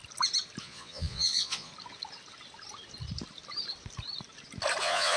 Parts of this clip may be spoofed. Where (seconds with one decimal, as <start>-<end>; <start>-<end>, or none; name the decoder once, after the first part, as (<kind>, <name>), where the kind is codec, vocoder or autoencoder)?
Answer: 0.6-1.7 (vocoder, Vocos); 4.8-5.2